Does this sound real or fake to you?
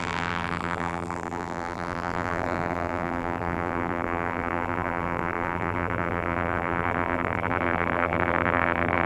fake